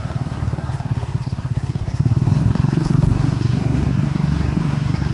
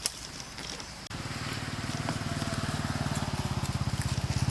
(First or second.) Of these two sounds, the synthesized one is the first